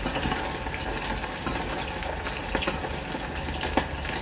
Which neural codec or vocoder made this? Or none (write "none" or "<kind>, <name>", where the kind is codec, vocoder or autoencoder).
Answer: none